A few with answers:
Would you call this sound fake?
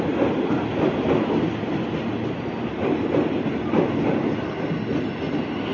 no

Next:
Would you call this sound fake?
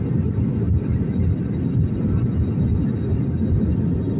no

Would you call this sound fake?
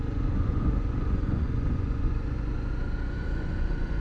yes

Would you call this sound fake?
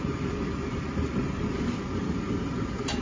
yes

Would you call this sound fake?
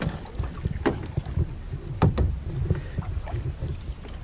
no